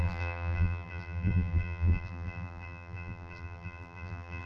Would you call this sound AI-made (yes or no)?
yes